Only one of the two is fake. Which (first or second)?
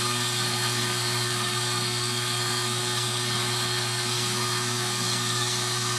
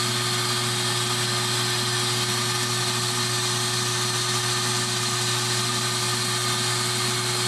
first